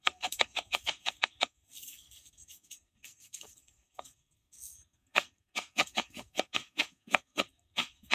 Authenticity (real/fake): fake